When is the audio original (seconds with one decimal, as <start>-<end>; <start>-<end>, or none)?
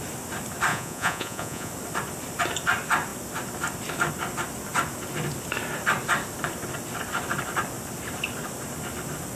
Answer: 0.0-0.7; 1.7-9.4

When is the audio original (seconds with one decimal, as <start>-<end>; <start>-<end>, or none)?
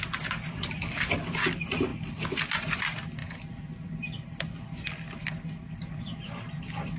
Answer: 0.0-7.0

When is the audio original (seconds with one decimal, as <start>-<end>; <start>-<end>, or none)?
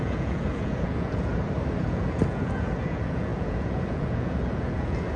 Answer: 1.3-1.8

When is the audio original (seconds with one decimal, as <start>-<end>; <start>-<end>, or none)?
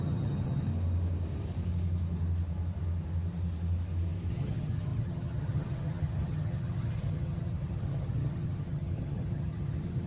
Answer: 0.7-4.3